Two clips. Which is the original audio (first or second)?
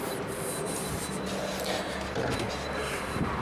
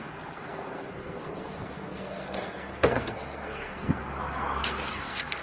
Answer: first